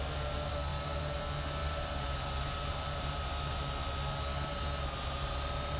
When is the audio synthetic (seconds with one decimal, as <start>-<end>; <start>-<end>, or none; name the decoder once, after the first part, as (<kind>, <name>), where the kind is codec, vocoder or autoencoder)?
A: 0.7-1.2 (vocoder, BigVGAN v2); 1.6-3.5